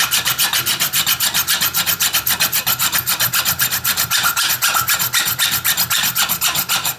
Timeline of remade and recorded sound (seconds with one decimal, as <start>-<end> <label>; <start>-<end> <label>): 0.0-7.0 recorded